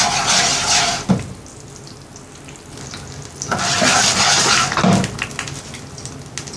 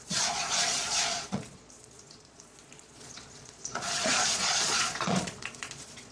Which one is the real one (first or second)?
first